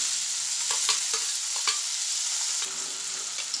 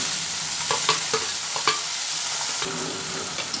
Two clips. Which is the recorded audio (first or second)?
first